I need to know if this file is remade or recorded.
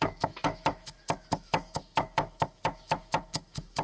remade